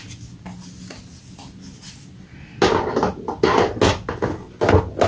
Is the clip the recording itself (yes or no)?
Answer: yes